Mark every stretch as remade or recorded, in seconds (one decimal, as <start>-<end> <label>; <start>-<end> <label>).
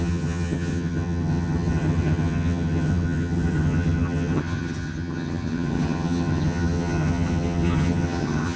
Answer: 0.0-8.6 remade